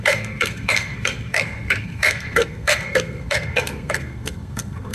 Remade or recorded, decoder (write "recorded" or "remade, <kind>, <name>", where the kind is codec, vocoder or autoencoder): remade, codec, SNAC